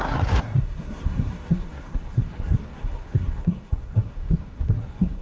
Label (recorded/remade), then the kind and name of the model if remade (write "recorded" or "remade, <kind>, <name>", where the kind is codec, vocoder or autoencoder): remade, codec, SNAC